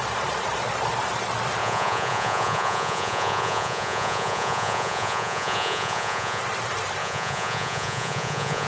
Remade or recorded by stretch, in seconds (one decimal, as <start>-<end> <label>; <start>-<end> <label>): 0.0-1.6 recorded; 1.6-6.4 remade; 6.4-7.0 recorded; 7.0-8.7 remade